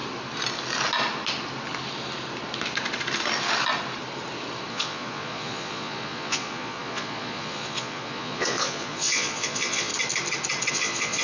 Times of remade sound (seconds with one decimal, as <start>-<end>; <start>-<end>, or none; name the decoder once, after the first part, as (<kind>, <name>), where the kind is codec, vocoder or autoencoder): 4.7-9.9 (vocoder, Vocos); 10.7-11.2